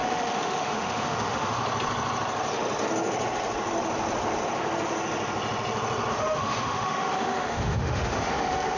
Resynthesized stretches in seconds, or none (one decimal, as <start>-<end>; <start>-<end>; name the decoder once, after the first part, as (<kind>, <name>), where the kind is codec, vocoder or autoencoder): 0.0-1.6 (autoencoder, DAC-VAE); 6.1-8.8